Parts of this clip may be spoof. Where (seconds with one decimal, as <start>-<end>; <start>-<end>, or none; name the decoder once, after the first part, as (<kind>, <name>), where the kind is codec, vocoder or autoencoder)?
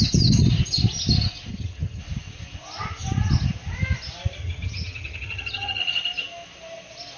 1.5-2.0 (vocoder, HiFi-GAN); 4.4-5.8